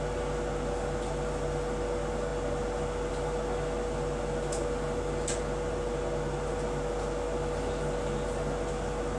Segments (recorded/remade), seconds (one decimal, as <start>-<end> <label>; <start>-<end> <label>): 0.0-9.2 recorded